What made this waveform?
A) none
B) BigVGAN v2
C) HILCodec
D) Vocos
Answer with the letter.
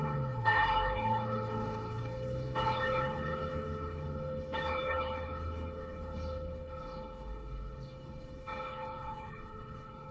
C